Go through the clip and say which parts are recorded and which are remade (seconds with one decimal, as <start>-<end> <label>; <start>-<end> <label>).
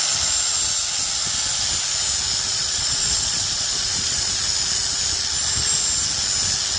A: 0.0-2.5 recorded; 2.5-4.4 remade; 4.4-6.8 recorded